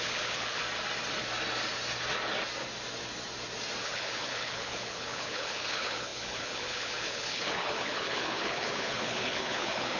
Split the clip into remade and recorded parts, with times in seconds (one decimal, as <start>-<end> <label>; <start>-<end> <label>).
0.0-0.6 remade; 0.6-3.8 recorded; 3.8-10.0 remade